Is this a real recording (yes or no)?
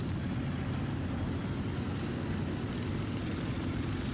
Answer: yes